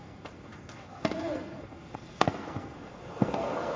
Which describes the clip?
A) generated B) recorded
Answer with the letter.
A